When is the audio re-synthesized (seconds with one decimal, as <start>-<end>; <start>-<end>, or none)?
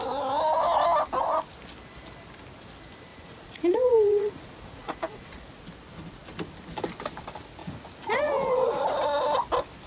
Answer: 3.1-5.6; 7.6-8.9